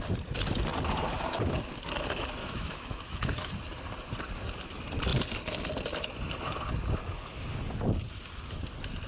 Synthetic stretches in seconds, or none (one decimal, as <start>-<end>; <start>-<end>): 2.4-3.5